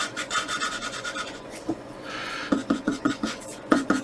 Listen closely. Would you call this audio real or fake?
fake